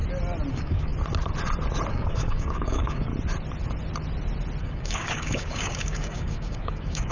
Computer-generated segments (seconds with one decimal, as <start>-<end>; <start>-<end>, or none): 0.5-0.9; 1.9-3.1; 4.6-7.1